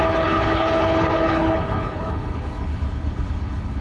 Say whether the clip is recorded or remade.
remade